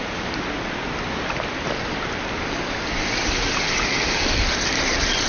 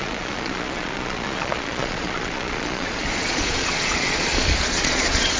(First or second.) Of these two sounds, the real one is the first